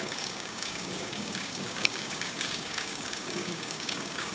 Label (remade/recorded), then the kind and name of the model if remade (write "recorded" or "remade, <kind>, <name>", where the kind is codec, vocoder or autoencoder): remade, codec, DAC